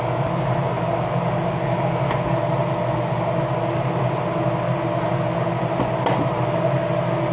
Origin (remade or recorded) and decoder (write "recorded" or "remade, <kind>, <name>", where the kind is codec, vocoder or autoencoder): recorded